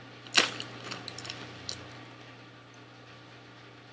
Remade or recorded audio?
recorded